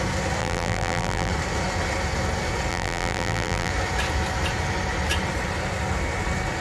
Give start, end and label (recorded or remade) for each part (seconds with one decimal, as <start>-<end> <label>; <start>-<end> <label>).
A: 0.0-0.4 recorded; 0.4-1.3 remade; 1.3-2.7 recorded; 2.7-3.7 remade; 3.7-6.6 recorded